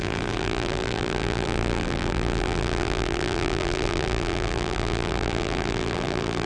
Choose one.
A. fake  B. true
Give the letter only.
A